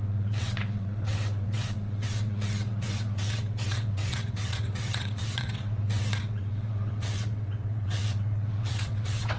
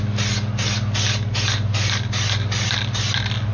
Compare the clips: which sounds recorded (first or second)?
second